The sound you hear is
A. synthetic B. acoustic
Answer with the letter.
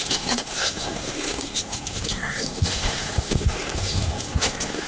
A